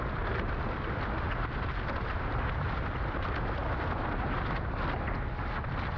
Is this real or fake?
real